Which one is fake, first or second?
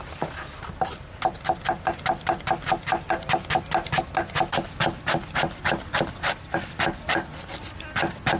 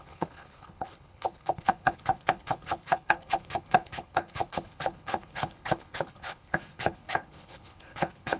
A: second